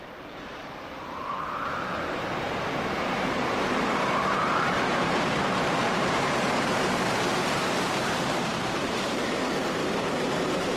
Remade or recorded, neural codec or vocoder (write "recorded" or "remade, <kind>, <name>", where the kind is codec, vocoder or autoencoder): remade, vocoder, BigVGAN v2